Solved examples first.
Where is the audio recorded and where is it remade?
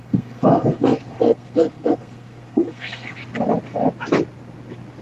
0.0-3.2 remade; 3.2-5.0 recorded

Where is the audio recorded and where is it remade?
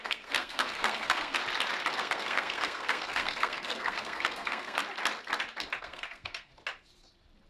0.0-1.4 remade; 1.4-1.9 recorded; 1.9-4.8 remade; 4.8-5.8 recorded; 5.8-6.5 remade; 6.5-7.5 recorded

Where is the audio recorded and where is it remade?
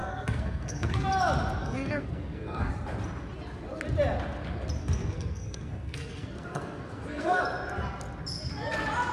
0.0-1.1 remade; 1.1-1.6 recorded; 1.6-2.7 remade; 2.7-4.8 recorded; 4.8-7.4 remade; 7.4-9.1 recorded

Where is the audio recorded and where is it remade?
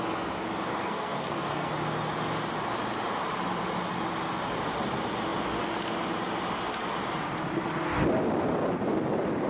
0.0-0.7 recorded; 0.7-1.7 remade; 1.7-9.5 recorded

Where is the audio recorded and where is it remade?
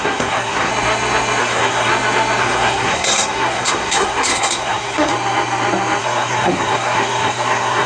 0.0-0.7 remade; 0.7-1.4 recorded; 1.4-1.9 remade; 1.9-2.4 recorded; 2.4-5.1 remade; 5.1-6.0 recorded; 6.0-7.9 remade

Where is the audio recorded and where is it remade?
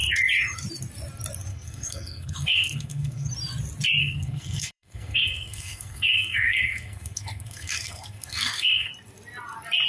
0.0-1.5 recorded; 1.5-3.3 remade; 3.3-4.0 recorded; 4.0-8.9 remade; 8.9-9.9 recorded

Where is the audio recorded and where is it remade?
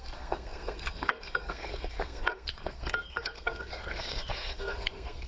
0.0-5.3 remade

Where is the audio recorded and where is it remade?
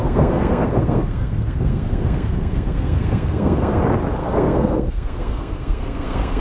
0.0-3.8 remade; 3.8-4.2 recorded; 4.2-6.4 remade